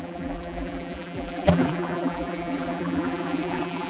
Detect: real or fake fake